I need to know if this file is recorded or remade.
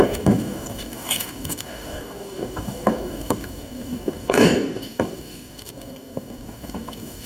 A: remade